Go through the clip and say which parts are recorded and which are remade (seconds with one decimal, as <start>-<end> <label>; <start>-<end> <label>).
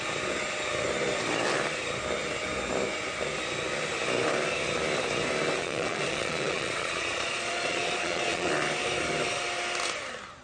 0.0-5.6 recorded; 5.6-8.5 remade; 8.5-10.4 recorded